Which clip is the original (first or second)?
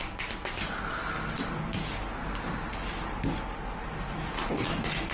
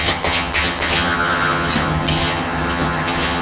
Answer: first